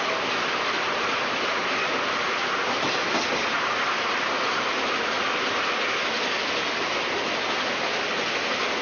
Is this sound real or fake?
real